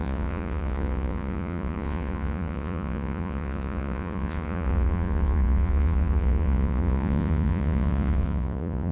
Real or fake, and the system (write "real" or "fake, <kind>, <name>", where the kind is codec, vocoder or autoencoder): fake, vocoder, Vocos